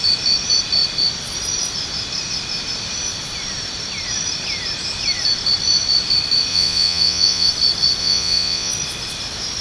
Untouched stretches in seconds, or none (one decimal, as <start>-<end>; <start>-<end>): 0.0-6.5; 7.5-8.0; 8.7-9.6